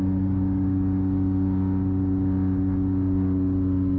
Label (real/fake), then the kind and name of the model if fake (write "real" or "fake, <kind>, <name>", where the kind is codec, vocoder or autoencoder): real